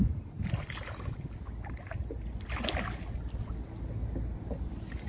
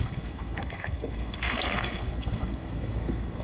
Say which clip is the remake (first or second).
second